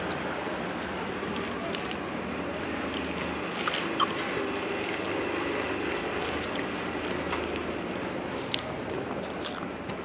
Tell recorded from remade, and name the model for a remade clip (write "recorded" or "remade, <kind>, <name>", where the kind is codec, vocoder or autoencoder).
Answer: recorded